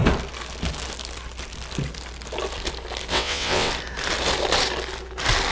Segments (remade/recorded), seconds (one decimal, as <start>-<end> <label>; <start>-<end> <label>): 0.0-3.1 recorded; 3.1-3.7 remade; 3.7-5.5 recorded